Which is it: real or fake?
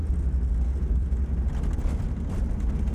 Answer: fake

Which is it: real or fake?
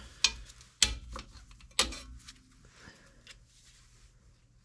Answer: real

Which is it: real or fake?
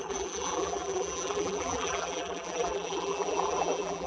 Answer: fake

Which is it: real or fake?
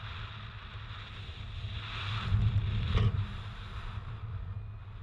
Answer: real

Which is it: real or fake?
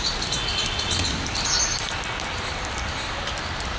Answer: real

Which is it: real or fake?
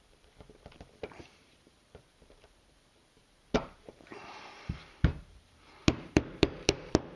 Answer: fake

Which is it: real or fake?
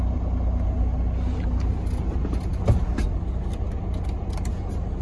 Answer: real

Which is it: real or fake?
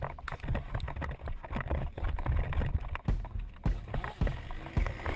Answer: real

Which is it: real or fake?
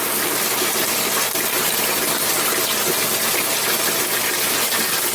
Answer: real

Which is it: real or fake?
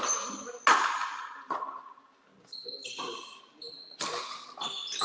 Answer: real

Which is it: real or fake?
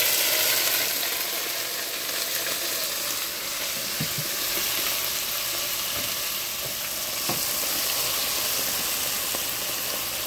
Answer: real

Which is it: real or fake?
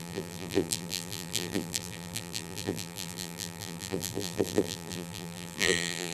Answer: fake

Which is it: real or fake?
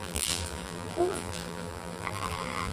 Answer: fake